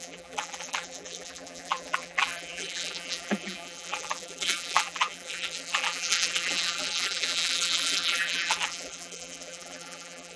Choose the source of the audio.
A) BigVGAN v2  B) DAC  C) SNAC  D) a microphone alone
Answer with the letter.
A